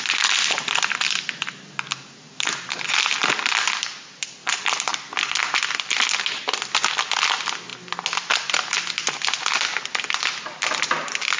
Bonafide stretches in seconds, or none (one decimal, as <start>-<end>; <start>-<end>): 0.0-11.4

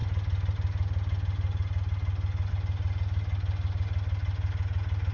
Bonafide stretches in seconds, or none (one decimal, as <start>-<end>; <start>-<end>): 0.0-5.1